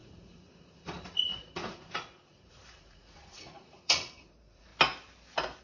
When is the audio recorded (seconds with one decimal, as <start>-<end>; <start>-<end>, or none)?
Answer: 4.7-5.6